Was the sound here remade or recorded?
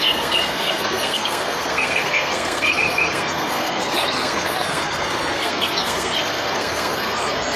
remade